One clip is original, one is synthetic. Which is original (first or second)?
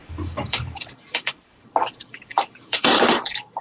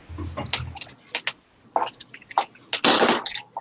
second